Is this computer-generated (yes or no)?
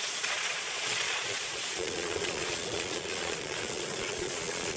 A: yes